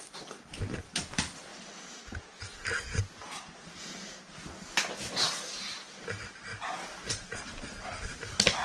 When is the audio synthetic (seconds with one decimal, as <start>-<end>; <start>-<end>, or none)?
1.5-3.9; 6.5-7.1